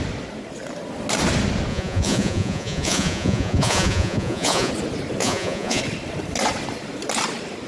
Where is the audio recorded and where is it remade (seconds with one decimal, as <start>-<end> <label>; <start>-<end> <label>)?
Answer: 0.0-1.7 recorded; 1.7-4.7 remade; 4.7-5.2 recorded; 5.2-5.8 remade; 5.8-7.7 recorded